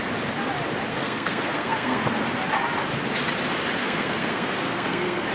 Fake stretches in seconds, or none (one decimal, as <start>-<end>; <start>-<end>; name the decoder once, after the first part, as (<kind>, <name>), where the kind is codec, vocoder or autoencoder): 0.9-2.2 (codec, SNAC); 3.8-5.3